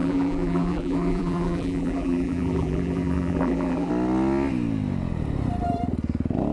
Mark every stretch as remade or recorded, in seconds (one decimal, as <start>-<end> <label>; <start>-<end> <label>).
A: 0.0-3.9 remade; 3.9-6.5 recorded